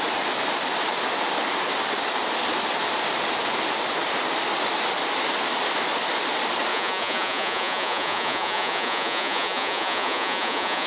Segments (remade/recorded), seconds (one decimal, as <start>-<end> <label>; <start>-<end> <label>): 0.0-6.7 recorded; 6.7-10.9 remade